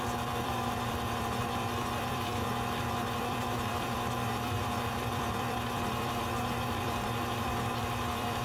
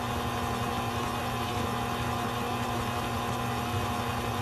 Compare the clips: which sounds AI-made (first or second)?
first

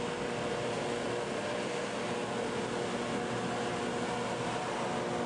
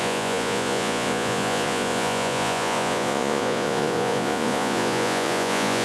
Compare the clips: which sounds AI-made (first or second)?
second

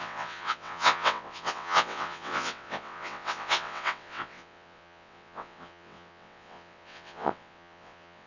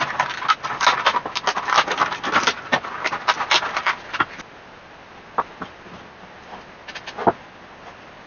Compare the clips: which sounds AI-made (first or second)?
first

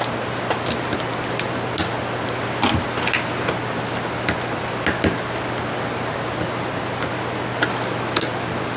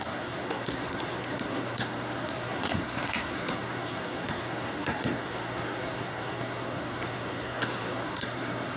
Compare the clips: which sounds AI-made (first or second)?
second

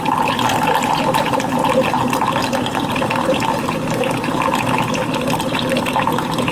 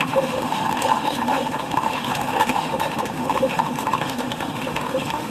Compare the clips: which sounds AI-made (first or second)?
second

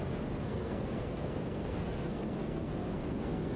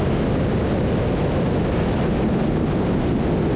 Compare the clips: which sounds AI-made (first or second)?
first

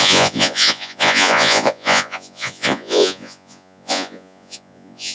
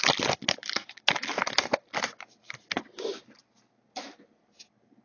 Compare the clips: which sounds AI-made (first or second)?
first